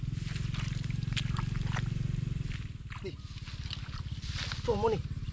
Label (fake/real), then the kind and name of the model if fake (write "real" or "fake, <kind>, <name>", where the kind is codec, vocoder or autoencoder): real